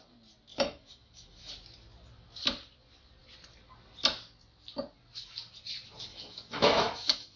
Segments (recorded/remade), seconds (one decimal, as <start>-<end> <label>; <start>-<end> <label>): 0.0-0.5 recorded; 0.5-1.5 remade; 1.5-6.1 recorded; 6.1-7.4 remade